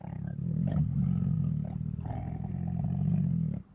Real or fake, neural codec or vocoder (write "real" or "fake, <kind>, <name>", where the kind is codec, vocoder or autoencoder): real